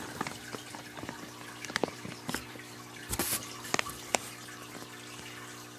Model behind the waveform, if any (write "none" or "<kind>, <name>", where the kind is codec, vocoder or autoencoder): none